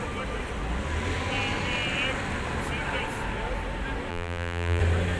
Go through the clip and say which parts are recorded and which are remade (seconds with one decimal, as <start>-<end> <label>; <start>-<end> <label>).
0.0-4.1 recorded; 4.1-4.8 remade; 4.8-5.2 recorded